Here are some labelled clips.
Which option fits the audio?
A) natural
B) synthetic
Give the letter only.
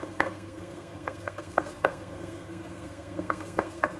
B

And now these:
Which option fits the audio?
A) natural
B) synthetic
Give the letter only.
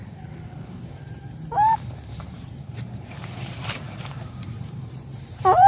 B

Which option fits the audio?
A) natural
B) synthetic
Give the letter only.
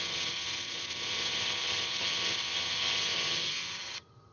B